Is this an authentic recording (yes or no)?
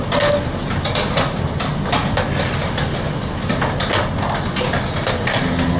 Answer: yes